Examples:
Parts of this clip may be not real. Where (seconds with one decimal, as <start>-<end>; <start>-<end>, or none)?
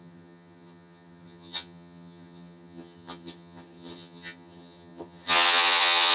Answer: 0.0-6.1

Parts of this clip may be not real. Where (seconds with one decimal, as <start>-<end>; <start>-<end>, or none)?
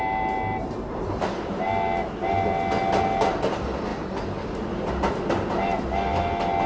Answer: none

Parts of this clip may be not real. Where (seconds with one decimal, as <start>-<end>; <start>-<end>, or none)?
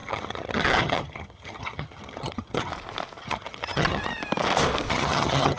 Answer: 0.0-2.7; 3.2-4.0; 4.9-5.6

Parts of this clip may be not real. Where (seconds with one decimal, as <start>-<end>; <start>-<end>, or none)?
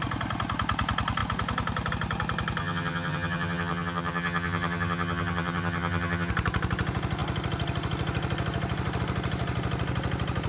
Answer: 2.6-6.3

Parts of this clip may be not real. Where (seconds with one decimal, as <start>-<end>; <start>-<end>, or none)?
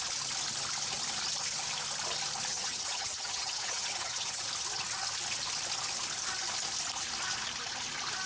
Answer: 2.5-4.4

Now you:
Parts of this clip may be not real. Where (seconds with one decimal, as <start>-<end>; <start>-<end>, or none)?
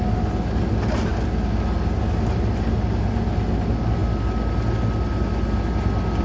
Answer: none